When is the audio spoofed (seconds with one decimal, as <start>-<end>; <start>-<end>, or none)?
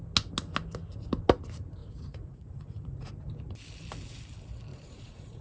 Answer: 1.8-3.1; 4.7-5.4